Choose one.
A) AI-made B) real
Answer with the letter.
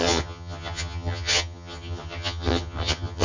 A